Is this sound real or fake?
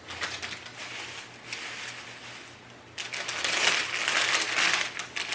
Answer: real